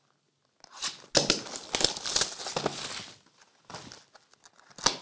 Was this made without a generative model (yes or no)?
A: yes